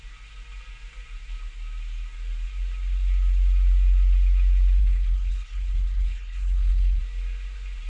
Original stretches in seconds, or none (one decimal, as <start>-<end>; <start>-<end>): 0.0-4.8; 7.0-7.9